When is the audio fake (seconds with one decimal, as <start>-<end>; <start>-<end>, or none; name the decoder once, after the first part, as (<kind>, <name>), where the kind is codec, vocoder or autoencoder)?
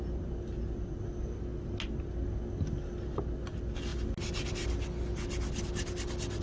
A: none